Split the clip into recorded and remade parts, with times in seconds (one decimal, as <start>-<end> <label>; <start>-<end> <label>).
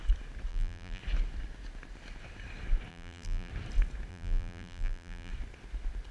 0.0-0.5 recorded; 0.5-1.0 remade; 1.0-2.9 recorded; 2.9-3.5 remade; 3.5-4.1 recorded; 4.1-5.3 remade; 5.3-6.1 recorded